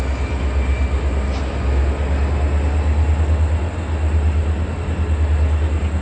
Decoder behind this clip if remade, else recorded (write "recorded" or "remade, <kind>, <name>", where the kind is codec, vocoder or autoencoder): recorded